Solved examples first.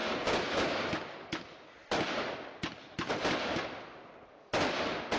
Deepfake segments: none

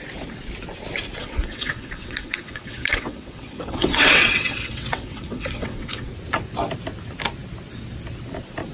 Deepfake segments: 1.2-6.1 (vocoder, WaveNeXt)

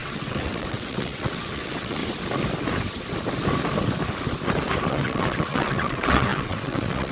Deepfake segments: 0.0-2.0 (vocoder, WaveNeXt); 4.9-7.1

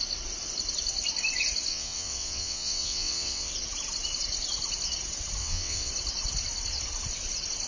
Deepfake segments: 1.7-3.5 (vocoder, WaveNeXt); 5.4-5.9